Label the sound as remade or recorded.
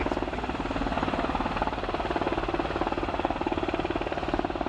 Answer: recorded